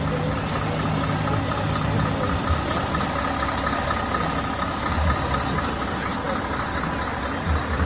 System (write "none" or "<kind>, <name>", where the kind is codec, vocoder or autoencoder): none